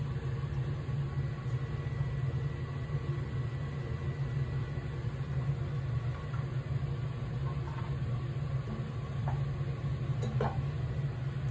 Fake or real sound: real